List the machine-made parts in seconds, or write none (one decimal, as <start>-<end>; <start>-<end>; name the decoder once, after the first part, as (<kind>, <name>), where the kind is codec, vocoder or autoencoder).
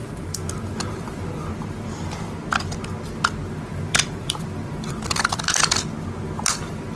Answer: 0.0-1.6 (vocoder, BigVGAN v2); 3.7-5.4